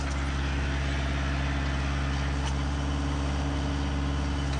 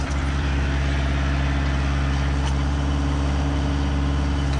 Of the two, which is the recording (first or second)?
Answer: first